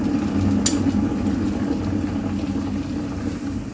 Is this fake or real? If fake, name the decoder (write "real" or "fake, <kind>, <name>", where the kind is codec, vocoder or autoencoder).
real